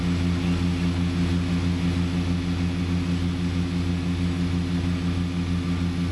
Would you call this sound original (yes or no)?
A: yes